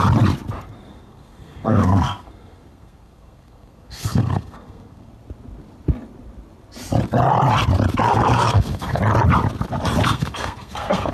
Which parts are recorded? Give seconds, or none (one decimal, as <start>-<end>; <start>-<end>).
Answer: 0.0-0.9; 5.1-8.1; 9.0-10.0